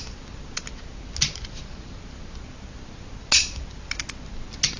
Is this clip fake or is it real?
real